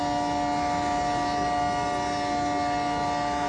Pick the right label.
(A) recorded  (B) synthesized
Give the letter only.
A